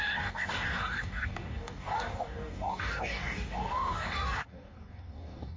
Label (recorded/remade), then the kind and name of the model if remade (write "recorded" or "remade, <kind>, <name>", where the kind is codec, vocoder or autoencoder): remade, codec, DAC